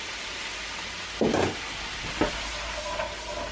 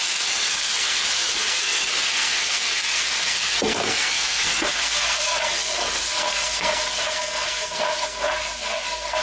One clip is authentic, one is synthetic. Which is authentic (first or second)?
first